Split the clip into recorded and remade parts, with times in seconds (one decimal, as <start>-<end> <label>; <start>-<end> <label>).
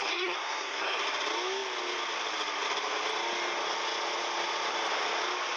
0.0-1.0 remade; 1.0-5.6 recorded